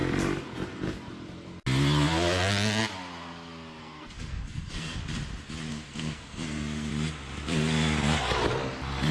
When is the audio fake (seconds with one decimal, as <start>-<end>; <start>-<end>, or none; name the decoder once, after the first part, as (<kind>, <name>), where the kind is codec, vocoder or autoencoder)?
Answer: 3.8-5.0 (codec, SNAC); 5.7-6.9